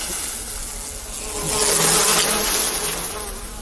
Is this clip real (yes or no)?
yes